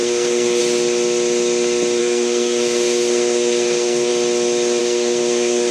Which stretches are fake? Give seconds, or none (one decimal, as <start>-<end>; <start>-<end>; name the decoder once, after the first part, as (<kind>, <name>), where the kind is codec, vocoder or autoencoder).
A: 0.0-0.6 (codec, SNAC); 2.0-4.1; 4.8-5.7